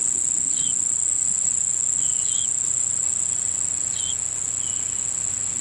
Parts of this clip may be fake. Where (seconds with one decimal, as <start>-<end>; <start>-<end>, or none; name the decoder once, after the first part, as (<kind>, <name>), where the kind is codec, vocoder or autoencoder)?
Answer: none